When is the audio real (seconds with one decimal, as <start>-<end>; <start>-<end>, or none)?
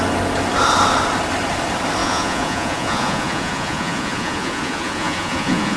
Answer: 0.0-2.0